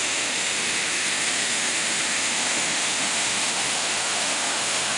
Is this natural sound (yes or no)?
no